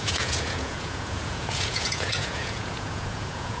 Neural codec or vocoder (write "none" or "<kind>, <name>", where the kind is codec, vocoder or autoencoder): vocoder, Vocos